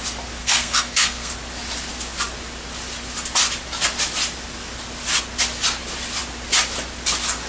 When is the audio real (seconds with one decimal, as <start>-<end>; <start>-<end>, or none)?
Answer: 0.0-0.4; 1.3-7.5